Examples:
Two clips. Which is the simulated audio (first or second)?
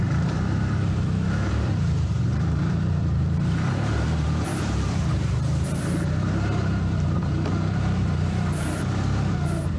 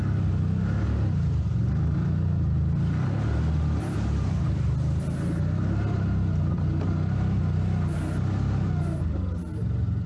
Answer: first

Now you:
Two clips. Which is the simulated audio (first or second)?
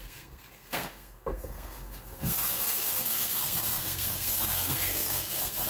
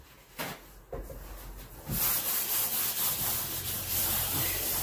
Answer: first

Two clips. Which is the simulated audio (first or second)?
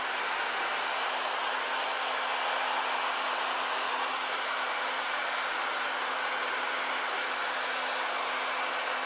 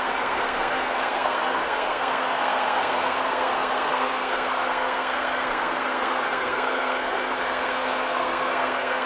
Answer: second